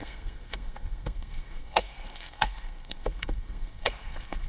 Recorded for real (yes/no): no